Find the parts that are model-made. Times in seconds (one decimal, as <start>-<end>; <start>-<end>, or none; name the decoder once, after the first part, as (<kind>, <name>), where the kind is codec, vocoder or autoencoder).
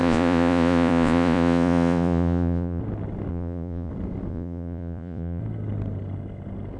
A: 0.0-2.8 (vocoder, Vocos); 3.3-3.9; 4.3-5.4